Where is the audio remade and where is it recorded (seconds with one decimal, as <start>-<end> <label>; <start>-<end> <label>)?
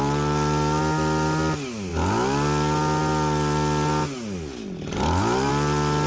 0.0-6.1 recorded